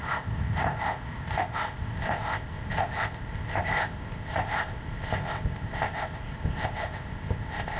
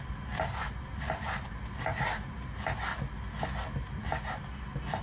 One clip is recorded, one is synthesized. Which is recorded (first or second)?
second